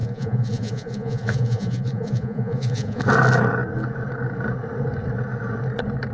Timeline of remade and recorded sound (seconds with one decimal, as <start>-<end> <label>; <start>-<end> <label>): 0.0-3.0 remade; 3.0-6.1 recorded